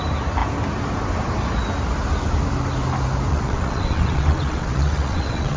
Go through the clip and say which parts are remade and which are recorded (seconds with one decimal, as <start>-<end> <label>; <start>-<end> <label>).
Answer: 0.0-3.3 recorded; 3.3-5.6 remade